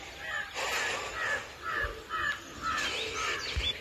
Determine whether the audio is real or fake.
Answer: real